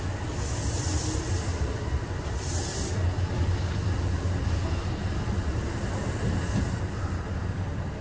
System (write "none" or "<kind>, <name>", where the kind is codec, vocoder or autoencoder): none